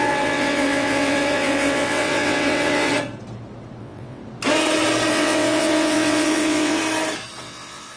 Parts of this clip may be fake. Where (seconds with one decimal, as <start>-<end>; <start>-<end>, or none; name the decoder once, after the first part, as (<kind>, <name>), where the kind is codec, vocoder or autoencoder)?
0.0-2.9 (vocoder, WaveNeXt); 3.8-4.2; 5.1-6.8; 7.4-8.0